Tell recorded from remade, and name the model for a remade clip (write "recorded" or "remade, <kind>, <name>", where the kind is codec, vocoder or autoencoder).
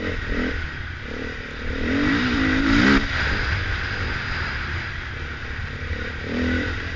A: recorded